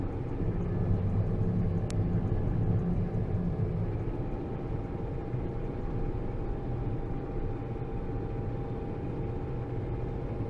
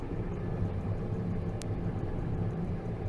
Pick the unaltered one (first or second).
first